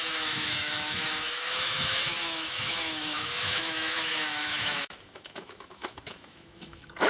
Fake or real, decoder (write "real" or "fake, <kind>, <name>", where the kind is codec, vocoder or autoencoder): fake, autoencoder, DAC-VAE